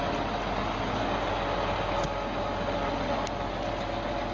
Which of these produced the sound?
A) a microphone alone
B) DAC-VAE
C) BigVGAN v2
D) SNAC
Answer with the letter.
A